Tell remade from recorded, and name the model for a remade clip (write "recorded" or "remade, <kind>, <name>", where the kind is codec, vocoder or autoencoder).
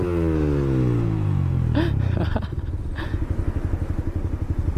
recorded